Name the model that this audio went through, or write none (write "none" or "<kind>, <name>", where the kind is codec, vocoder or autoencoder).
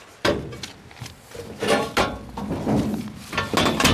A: none